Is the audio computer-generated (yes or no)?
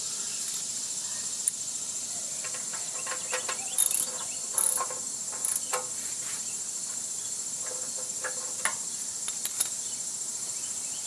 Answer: no